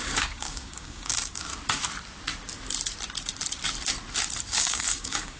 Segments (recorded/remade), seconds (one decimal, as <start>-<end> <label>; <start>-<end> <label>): 0.0-1.5 remade; 1.5-4.4 recorded; 4.4-5.4 remade